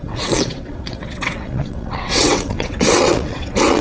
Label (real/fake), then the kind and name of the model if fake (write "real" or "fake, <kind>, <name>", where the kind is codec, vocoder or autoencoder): fake, vocoder, WaveNeXt